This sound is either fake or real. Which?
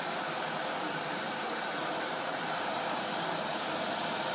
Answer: fake